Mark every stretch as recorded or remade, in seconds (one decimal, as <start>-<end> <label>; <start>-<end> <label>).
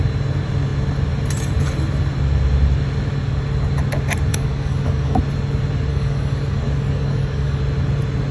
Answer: 0.0-4.3 recorded; 4.3-5.2 remade; 5.2-5.9 recorded; 5.9-7.6 remade; 7.6-8.3 recorded